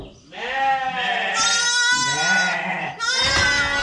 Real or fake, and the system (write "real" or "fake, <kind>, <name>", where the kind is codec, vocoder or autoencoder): real